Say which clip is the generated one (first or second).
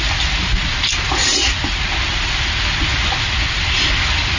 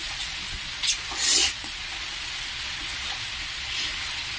second